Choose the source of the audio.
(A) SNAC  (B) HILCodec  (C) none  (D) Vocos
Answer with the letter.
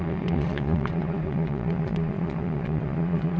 D